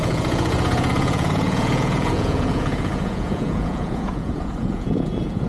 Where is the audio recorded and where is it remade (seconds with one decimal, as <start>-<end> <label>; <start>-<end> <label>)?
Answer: 0.0-5.5 remade